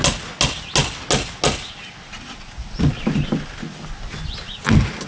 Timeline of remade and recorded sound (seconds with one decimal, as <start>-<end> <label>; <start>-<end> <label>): 0.0-5.1 recorded